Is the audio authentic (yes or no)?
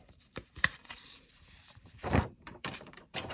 no